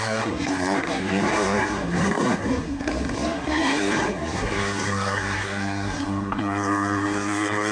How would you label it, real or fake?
fake